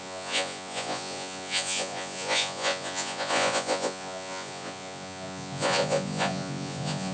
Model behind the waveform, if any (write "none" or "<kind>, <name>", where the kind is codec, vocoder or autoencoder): vocoder, Vocos